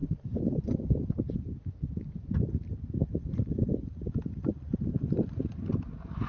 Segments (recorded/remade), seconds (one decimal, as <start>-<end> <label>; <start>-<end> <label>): 0.0-1.1 remade; 1.1-3.0 recorded; 3.0-5.6 remade; 5.6-6.3 recorded